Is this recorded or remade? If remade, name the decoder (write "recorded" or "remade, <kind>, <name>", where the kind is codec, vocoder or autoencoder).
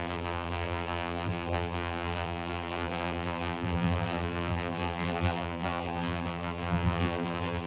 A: remade, vocoder, BigVGAN v2